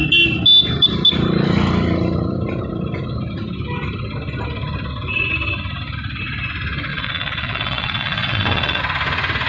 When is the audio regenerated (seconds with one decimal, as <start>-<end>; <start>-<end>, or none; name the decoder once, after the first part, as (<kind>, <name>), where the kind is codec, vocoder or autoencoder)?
6.9-8.8 (vocoder, WaveNeXt)